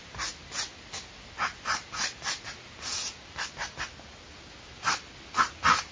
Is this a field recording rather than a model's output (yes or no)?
yes